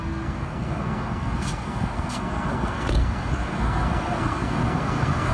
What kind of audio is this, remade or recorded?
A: remade